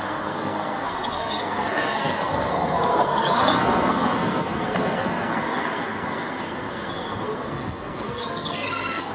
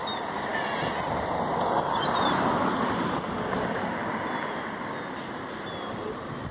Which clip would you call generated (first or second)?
first